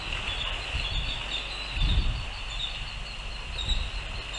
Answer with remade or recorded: recorded